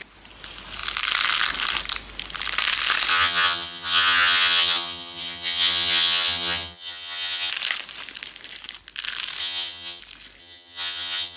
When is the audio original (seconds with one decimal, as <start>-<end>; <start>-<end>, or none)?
0.0-3.1; 7.5-9.4; 10.0-10.4

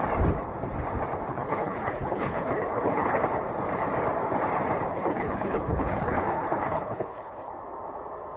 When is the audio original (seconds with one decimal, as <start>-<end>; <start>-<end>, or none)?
0.0-1.3; 3.2-4.9; 7.5-8.4